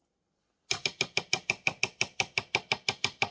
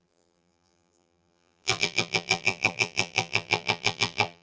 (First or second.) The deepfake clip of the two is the second